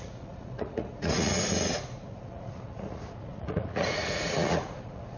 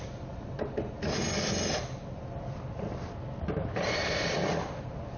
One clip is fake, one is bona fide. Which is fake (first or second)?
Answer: first